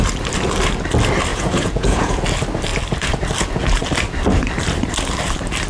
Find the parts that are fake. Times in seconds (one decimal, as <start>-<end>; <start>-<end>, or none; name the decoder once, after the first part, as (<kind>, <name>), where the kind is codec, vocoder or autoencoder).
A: 1.3-2.2 (vocoder, Vocos)